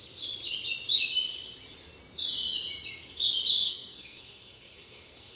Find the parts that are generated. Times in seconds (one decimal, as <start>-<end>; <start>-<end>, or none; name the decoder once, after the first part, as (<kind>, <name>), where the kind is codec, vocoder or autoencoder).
3.6-5.4 (codec, SNAC)